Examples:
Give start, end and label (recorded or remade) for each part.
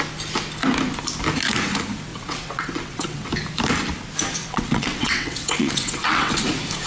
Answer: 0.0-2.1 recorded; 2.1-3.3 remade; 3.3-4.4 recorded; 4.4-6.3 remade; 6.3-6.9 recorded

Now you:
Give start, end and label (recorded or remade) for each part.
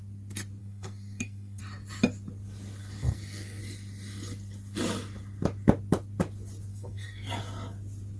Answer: 0.0-0.6 recorded; 0.6-1.6 remade; 1.6-2.8 recorded; 2.8-3.6 remade; 3.6-6.7 recorded; 6.7-7.4 remade; 7.4-8.2 recorded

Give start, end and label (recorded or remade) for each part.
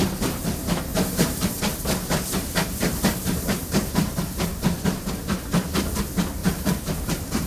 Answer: 0.0-0.9 recorded; 0.9-1.5 remade; 1.5-2.5 recorded; 2.5-4.4 remade; 4.4-6.4 recorded; 6.4-7.5 remade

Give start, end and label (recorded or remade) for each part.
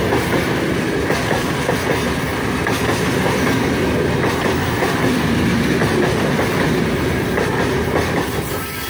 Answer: 0.0-8.9 recorded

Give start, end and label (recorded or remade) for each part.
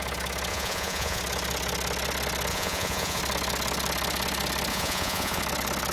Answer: 0.0-0.5 recorded; 0.5-1.2 remade; 1.2-2.5 recorded; 2.5-3.2 remade; 3.2-4.7 recorded; 4.7-5.4 remade; 5.4-5.9 recorded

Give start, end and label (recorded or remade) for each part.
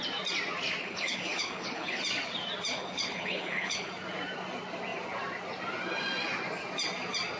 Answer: 0.0-0.8 recorded; 0.8-2.0 remade; 2.0-2.7 recorded; 2.7-3.9 remade; 3.9-7.4 recorded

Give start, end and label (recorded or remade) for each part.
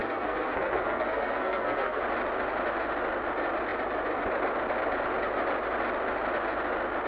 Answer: 0.0-2.0 remade; 2.0-7.1 recorded